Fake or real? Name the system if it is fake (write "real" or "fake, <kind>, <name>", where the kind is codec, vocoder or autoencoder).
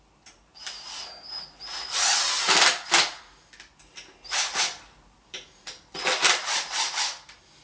real